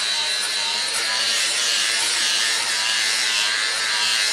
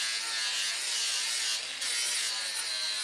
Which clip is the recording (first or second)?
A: second